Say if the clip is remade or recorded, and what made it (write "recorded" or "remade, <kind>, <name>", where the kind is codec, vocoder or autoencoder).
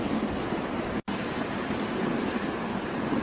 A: recorded